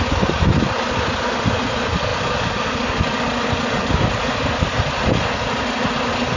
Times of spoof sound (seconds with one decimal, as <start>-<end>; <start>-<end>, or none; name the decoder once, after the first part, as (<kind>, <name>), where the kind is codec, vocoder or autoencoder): none